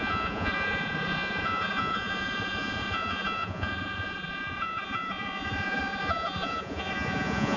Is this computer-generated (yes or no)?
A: yes